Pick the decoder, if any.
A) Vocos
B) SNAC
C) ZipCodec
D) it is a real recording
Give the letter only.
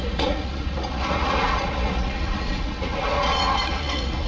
A